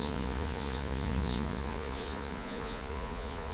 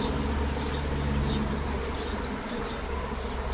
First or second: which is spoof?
first